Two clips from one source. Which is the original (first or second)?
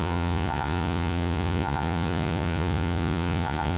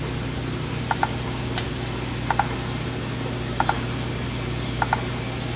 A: second